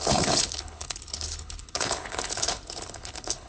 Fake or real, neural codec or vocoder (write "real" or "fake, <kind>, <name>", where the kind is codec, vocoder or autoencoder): fake, codec, HILCodec